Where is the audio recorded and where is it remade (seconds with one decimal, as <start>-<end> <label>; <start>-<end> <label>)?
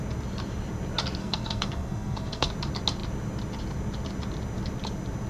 0.0-1.2 recorded; 1.2-2.5 remade; 2.5-5.3 recorded